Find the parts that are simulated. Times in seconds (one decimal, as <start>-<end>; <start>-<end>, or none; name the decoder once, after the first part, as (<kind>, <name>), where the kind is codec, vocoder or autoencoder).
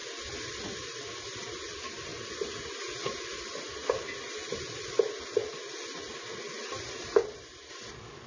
0.5-2.1 (vocoder, BigVGAN v2); 6.1-7.2; 7.7-8.3